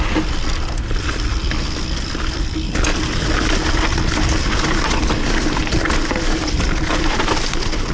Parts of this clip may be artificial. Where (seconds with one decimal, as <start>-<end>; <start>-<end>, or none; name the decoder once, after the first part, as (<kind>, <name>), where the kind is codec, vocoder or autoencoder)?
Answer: none